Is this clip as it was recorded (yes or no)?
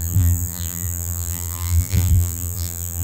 no